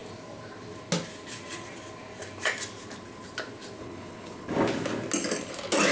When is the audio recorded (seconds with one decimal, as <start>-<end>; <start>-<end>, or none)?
0.0-3.8; 4.5-5.9